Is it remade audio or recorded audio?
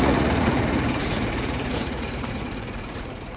remade